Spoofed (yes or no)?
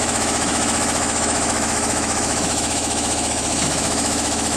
yes